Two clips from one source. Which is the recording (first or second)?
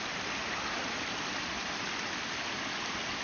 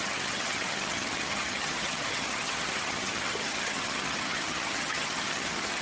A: first